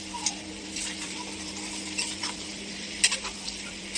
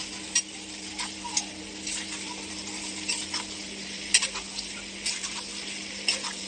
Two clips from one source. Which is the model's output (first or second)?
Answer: first